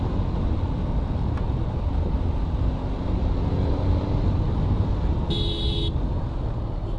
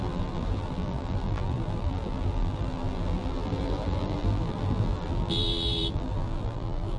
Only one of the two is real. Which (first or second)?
first